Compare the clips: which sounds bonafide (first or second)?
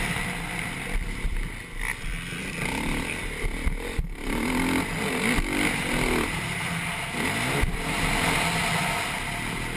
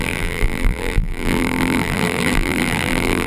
first